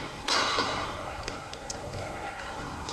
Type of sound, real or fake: fake